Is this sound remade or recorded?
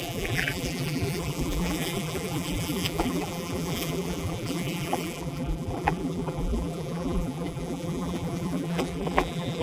remade